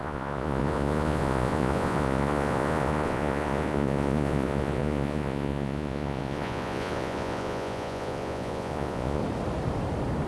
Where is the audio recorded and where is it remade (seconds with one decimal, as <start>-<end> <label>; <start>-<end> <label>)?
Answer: 0.0-9.2 remade; 9.2-10.3 recorded